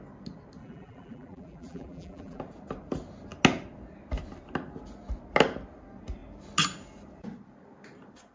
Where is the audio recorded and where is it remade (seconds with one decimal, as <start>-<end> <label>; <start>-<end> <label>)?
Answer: 0.0-0.6 recorded; 0.6-2.4 remade; 2.4-8.3 recorded